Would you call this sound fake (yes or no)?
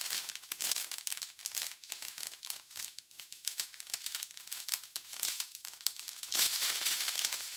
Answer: yes